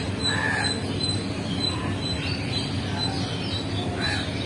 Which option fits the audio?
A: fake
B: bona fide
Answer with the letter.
B